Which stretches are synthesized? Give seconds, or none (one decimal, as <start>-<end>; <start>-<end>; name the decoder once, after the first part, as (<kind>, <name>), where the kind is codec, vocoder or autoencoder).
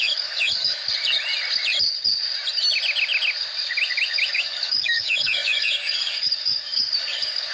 0.0-0.8 (codec, DAC); 4.3-7.5